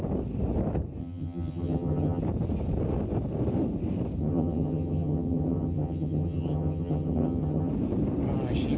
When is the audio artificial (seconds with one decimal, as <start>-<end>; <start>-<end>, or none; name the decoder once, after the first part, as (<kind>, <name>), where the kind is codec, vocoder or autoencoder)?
1.0-2.2 (vocoder, HiFi-GAN); 4.2-7.7